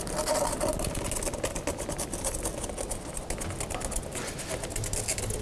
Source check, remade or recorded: recorded